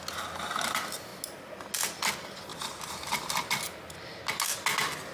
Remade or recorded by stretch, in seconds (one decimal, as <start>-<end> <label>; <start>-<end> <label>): 0.0-5.1 recorded